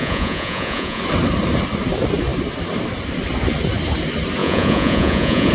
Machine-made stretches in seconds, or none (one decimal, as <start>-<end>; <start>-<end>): 0.0-1.0; 4.4-5.5

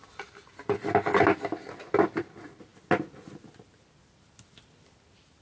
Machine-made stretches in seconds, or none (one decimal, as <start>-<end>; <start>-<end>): none

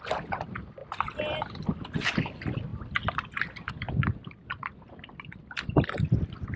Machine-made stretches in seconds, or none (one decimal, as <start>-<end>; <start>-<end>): 2.7-3.7; 4.4-5.4